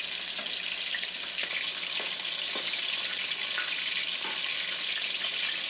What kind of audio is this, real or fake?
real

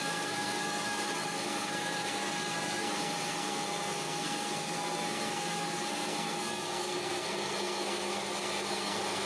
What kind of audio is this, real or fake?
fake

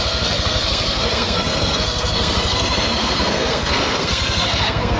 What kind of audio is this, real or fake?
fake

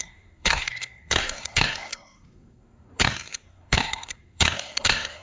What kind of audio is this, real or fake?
fake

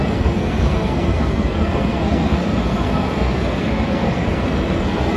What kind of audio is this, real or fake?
fake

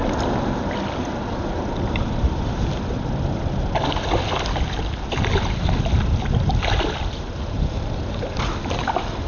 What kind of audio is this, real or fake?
real